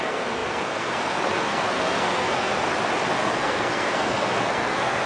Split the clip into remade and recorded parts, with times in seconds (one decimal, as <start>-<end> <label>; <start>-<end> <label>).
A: 0.0-2.5 remade; 2.5-3.1 recorded; 3.1-5.1 remade

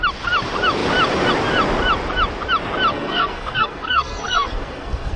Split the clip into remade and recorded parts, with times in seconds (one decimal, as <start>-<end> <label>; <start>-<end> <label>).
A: 0.0-2.9 recorded; 2.9-5.2 remade